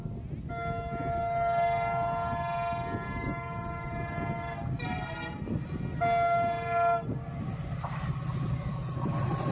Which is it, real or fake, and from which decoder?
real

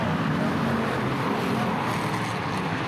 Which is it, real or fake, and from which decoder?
real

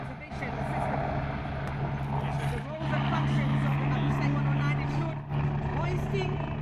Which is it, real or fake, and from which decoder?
real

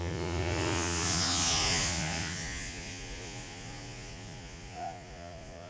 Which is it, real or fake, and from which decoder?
fake, vocoder, Vocos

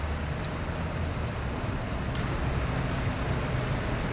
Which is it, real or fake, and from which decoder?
real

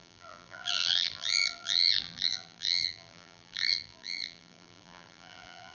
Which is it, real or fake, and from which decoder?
fake, vocoder, BigVGAN v2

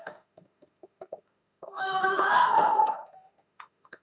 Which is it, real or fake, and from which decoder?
fake, autoencoder, DAC-VAE